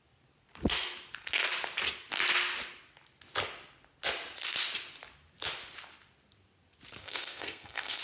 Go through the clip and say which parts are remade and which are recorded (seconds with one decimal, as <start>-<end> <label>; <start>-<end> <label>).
0.0-7.0 recorded; 7.0-8.0 remade